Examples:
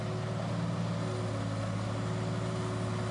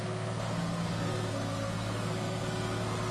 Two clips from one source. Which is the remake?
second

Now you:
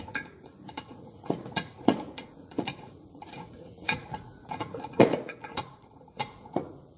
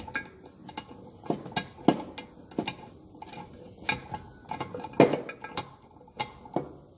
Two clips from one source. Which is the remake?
first